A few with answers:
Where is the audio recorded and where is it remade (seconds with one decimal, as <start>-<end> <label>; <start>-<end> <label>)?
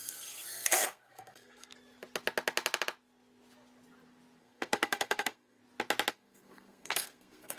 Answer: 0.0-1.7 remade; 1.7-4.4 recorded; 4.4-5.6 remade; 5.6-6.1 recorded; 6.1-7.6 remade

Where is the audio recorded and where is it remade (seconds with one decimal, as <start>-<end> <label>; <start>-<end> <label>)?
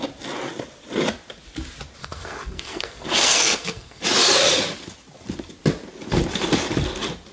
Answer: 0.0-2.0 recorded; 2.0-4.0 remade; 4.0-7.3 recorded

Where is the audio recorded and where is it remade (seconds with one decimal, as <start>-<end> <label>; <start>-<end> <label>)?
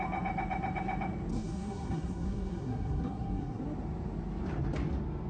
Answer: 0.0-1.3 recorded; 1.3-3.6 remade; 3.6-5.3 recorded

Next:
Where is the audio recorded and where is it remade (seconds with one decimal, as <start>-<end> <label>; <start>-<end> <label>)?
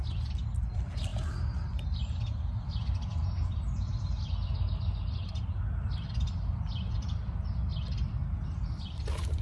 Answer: 0.0-9.4 recorded